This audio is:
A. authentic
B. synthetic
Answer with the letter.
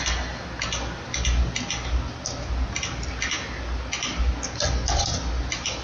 A